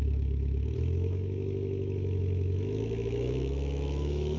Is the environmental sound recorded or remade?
remade